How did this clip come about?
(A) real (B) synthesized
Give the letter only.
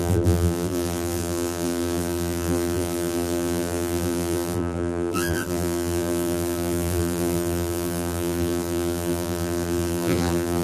B